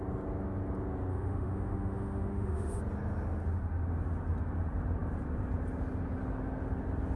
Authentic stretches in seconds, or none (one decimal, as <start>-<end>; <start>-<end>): 0.0-1.1; 2.8-7.2